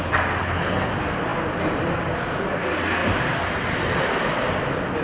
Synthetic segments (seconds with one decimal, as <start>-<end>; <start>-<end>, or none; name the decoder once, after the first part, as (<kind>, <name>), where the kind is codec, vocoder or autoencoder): 0.4-0.9 (codec, HILCodec)